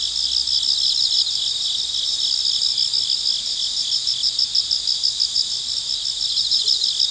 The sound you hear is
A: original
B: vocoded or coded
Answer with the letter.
A